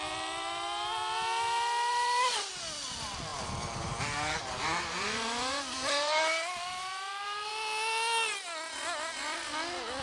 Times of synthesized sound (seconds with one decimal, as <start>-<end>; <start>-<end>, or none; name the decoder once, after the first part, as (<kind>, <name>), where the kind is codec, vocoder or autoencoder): 1.9-2.5 (vocoder, BigVGAN v2); 3.3-7.5